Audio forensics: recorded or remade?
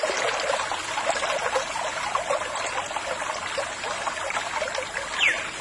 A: recorded